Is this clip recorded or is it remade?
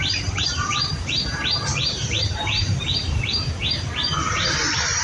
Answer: remade